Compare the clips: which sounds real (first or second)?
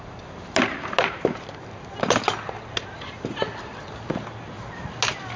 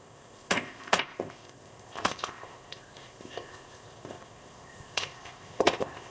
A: first